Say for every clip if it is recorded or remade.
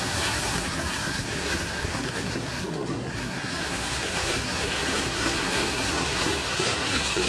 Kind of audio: remade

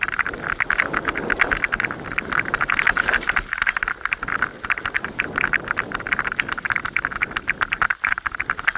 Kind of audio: recorded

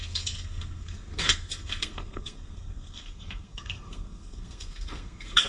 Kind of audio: remade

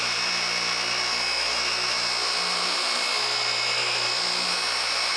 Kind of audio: recorded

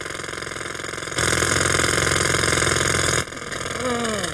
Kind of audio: recorded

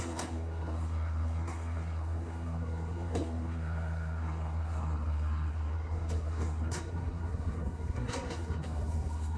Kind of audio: remade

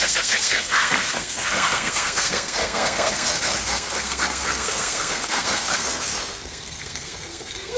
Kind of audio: remade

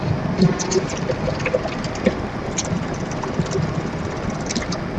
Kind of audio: recorded